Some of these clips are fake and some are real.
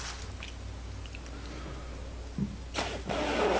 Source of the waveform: real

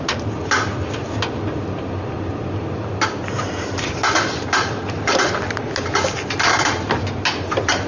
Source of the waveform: real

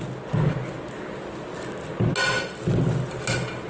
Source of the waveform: real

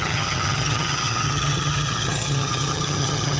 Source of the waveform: fake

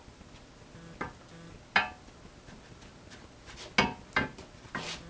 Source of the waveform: real